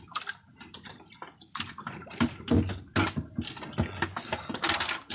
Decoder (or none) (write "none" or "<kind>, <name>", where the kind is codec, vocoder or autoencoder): none